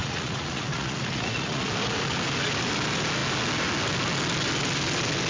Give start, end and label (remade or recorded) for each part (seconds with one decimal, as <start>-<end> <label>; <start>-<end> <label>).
0.0-1.6 remade; 1.6-5.3 recorded